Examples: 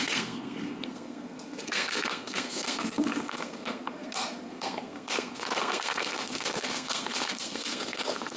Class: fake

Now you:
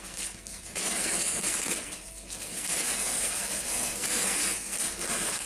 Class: fake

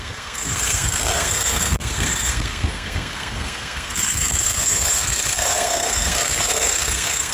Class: fake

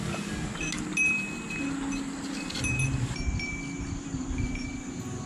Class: real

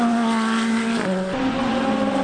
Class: real